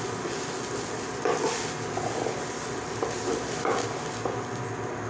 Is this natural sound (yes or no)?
yes